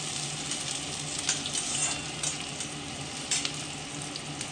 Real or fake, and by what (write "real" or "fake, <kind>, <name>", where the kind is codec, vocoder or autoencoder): real